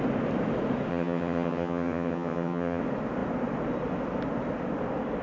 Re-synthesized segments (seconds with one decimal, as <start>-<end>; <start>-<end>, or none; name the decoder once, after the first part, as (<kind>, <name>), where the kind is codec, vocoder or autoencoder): 0.9-2.8 (vocoder, HiFi-GAN)